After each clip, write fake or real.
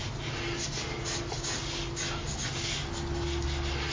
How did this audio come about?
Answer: real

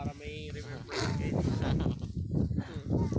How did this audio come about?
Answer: real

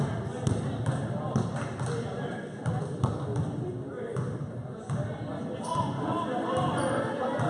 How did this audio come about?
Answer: real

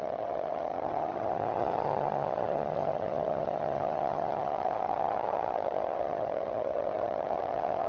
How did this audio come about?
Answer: fake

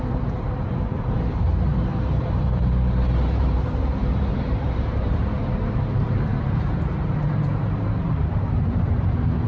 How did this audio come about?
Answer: fake